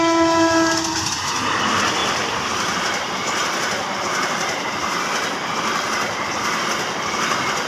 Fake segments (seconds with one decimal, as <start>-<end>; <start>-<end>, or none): 2.0-5.0